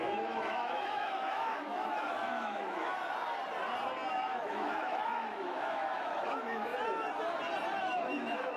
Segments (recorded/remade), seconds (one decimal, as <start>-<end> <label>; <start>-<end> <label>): 0.0-2.9 remade; 2.9-4.1 recorded; 4.1-6.7 remade; 6.7-7.8 recorded; 7.8-8.6 remade